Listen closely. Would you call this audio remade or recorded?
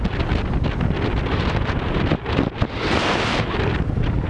remade